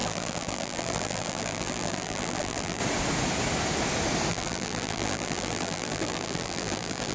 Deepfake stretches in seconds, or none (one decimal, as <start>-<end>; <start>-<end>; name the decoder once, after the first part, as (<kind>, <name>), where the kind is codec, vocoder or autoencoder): 0.0-2.8 (vocoder, BigVGAN v2); 4.3-7.1